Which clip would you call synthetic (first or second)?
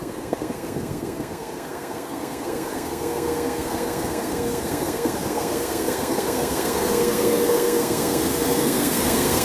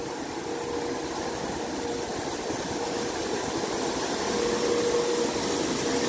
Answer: first